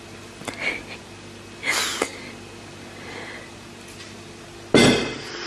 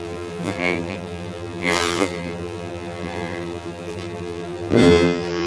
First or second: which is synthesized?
second